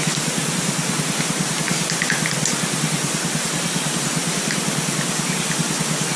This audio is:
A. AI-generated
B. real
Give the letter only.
B